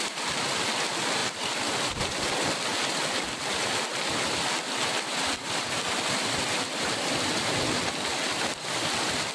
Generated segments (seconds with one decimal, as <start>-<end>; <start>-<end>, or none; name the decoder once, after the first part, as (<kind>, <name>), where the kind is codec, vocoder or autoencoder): none